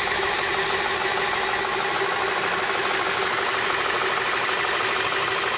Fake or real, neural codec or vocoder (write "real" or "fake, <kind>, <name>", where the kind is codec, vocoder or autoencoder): real